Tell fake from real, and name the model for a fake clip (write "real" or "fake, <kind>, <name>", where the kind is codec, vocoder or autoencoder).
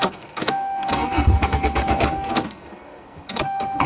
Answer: fake, codec, SNAC